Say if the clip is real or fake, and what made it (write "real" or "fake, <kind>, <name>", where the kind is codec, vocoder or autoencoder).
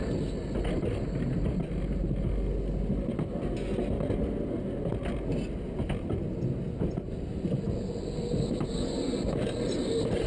real